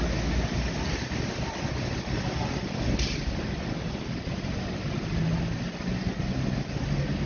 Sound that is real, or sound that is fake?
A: real